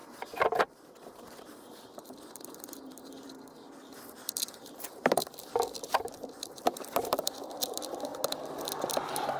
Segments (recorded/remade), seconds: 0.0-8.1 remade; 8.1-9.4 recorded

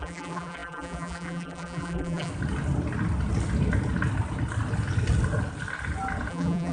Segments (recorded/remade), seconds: 0.0-2.3 remade; 2.3-6.3 recorded; 6.3-6.7 remade